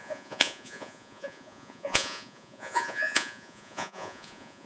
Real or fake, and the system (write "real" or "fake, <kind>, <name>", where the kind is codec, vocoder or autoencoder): fake, vocoder, Vocos